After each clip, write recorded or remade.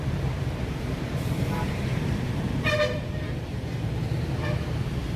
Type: remade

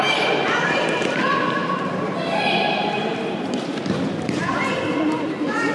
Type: remade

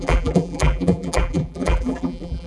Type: remade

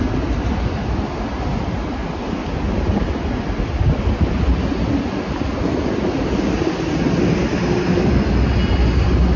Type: recorded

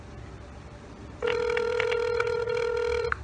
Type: remade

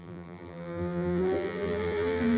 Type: remade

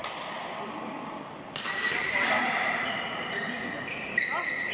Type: remade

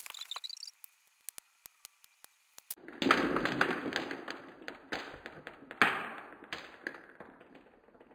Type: recorded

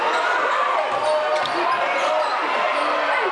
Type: recorded